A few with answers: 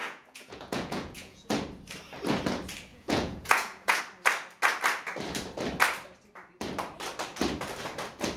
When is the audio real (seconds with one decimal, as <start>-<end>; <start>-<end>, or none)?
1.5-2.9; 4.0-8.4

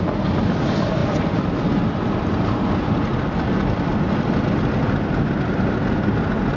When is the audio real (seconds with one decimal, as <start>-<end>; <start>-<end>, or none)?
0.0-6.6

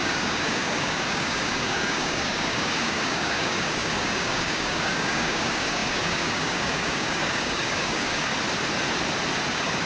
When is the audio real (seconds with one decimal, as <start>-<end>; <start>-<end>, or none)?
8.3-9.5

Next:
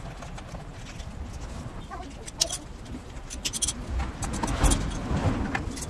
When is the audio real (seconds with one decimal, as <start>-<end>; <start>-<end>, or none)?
0.0-5.9

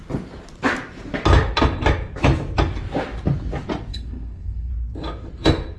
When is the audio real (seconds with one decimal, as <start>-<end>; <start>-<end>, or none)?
0.0-3.9; 4.7-5.8

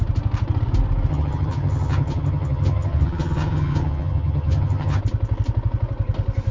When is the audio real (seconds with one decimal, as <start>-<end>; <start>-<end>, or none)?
0.0-1.1; 5.0-6.5

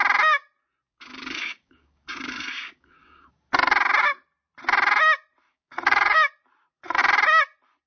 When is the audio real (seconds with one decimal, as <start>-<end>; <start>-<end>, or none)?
0.0-0.9; 3.3-5.5; 6.3-7.9